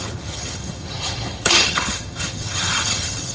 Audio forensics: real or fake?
fake